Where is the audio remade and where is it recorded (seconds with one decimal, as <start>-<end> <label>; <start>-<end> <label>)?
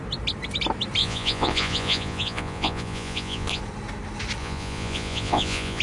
0.0-1.0 recorded; 1.0-3.6 remade; 3.6-4.4 recorded; 4.4-5.8 remade